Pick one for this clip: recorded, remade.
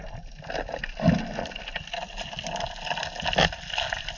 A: recorded